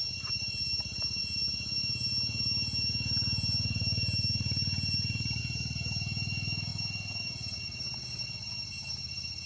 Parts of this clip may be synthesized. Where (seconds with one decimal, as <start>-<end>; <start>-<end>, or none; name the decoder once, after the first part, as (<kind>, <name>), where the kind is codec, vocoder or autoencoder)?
none